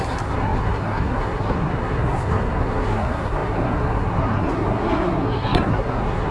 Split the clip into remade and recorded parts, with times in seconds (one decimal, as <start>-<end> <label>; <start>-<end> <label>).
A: 0.0-6.3 remade